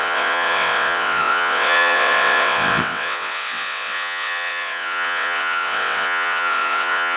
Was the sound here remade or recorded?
remade